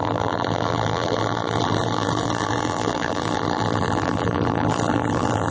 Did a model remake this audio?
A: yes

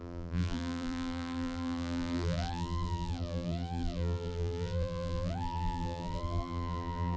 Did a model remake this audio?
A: yes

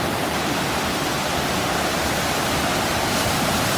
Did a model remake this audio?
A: yes